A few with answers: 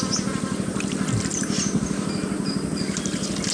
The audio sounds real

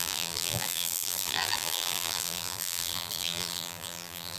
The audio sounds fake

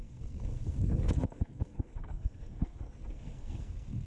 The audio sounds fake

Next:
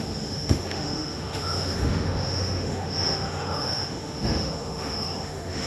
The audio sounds fake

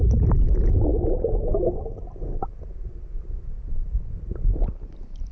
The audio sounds fake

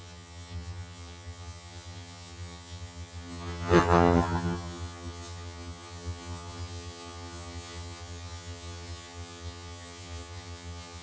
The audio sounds fake